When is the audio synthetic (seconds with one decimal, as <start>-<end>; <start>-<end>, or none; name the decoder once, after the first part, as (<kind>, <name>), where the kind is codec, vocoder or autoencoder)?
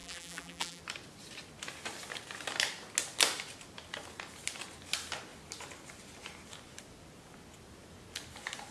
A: 0.0-0.8 (vocoder, BigVGAN v2)